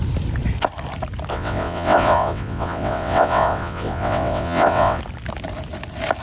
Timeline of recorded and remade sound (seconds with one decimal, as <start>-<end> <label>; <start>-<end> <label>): 0.0-1.3 recorded; 1.3-5.0 remade; 5.0-6.2 recorded